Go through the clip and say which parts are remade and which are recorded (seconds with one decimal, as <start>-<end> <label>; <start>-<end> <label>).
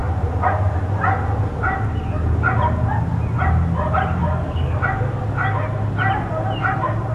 0.0-4.2 recorded; 4.2-4.8 remade; 4.8-7.1 recorded